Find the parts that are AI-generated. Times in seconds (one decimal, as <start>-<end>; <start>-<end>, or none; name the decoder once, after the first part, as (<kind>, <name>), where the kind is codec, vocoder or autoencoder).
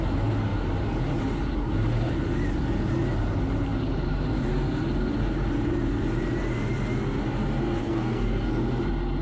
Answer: 7.8-8.6 (codec, SNAC)